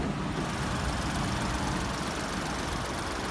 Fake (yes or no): no